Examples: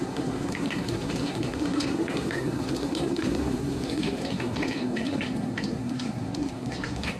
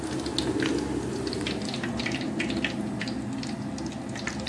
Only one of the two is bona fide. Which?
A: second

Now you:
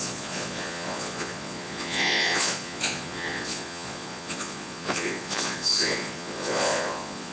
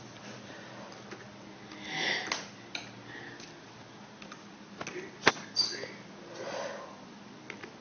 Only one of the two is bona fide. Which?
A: second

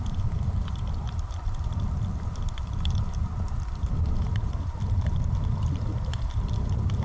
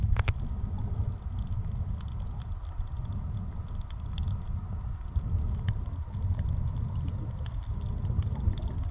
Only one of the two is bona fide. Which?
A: second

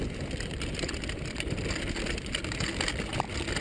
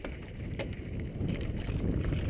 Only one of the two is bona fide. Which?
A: first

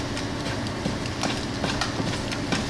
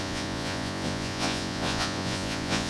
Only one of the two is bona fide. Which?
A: first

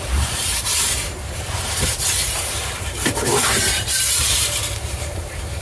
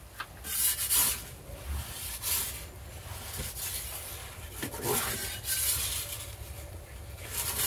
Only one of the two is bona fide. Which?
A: second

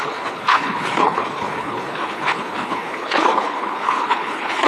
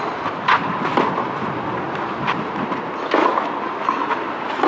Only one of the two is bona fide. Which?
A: second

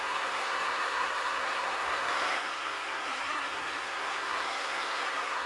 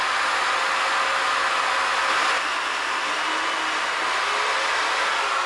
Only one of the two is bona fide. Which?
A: second